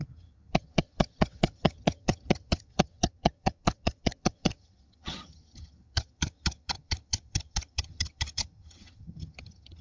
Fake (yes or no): yes